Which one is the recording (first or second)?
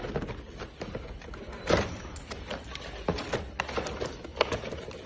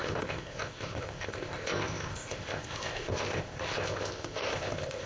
first